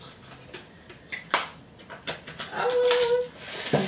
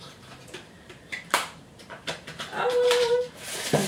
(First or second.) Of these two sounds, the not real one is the second